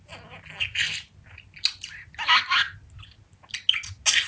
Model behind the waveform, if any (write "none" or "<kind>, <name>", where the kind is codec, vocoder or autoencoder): none